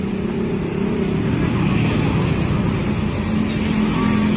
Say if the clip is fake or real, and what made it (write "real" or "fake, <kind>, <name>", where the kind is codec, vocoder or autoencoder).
real